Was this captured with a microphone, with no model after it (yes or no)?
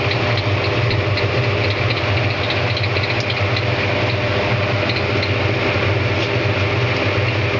yes